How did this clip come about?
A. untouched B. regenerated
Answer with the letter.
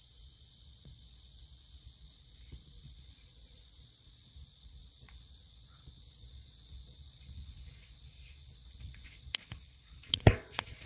B